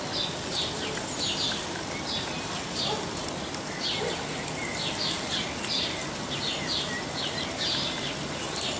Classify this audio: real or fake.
real